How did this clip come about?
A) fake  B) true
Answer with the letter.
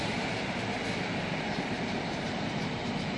A